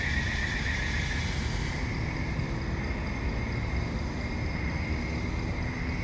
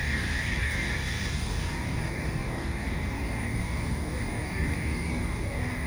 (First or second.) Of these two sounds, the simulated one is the second